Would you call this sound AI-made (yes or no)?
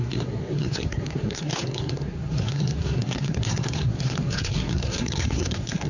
yes